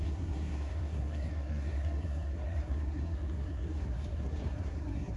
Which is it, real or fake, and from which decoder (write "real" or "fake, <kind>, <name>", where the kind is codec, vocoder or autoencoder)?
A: fake, codec, SNAC